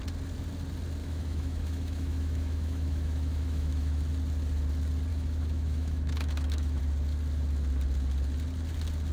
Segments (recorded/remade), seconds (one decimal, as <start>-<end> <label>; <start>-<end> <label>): 0.0-1.0 recorded; 1.0-4.0 remade; 4.0-5.1 recorded; 5.1-6.8 remade; 6.8-9.1 recorded